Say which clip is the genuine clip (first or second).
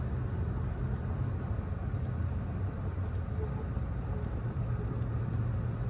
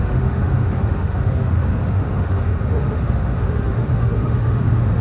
first